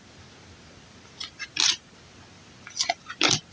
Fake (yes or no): no